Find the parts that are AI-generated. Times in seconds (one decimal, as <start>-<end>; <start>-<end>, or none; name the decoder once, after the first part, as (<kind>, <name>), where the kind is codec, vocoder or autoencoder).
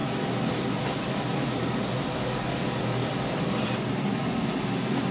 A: 3.0-3.9 (vocoder, BigVGAN v2)